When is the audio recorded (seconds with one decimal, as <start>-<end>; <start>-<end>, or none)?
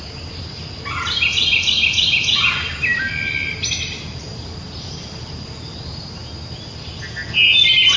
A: 0.0-8.0